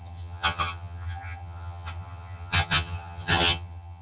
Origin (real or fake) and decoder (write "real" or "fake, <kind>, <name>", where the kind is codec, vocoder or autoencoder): fake, vocoder, HiFi-GAN